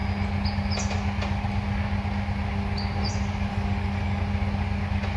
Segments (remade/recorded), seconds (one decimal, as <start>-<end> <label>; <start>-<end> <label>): 0.0-3.5 recorded; 3.5-4.2 remade; 4.2-5.2 recorded